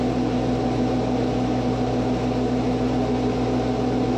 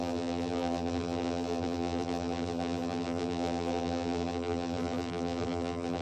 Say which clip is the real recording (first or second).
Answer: first